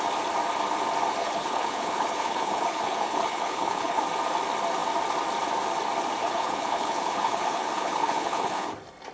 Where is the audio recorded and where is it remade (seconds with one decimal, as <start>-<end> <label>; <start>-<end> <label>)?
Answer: 0.0-1.2 recorded; 1.2-4.0 remade; 4.0-6.2 recorded; 6.2-8.7 remade; 8.7-9.1 recorded